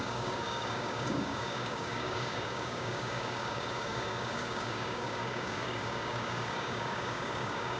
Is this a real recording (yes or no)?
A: no